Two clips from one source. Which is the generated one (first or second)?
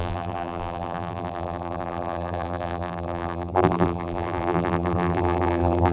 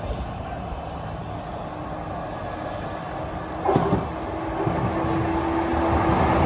first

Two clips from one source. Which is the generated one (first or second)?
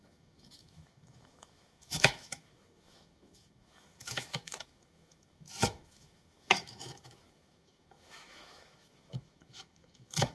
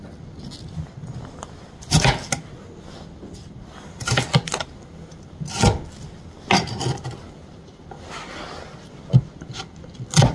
first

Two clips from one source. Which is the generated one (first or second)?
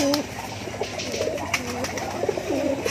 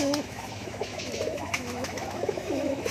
second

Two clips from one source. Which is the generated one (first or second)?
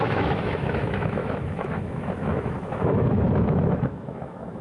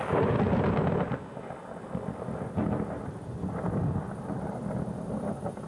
first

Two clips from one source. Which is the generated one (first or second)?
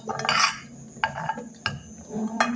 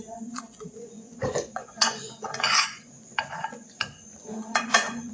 second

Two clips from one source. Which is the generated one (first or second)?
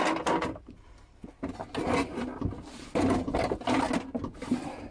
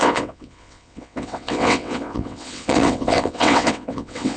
second